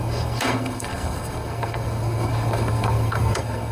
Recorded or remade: remade